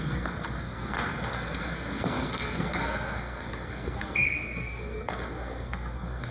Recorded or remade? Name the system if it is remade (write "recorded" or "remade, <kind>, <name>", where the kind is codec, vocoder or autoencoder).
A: remade, codec, SNAC